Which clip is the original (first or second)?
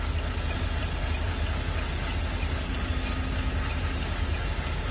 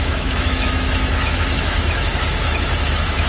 first